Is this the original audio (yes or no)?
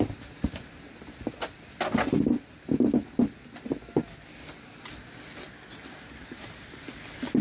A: yes